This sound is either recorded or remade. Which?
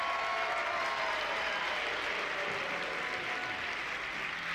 recorded